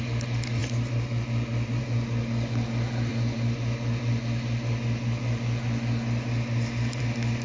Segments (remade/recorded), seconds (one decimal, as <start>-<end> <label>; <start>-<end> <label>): 0.0-7.4 recorded